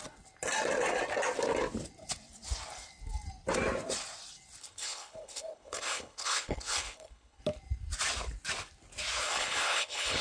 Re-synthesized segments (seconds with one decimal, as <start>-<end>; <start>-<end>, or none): 4.6-7.4; 9.2-10.2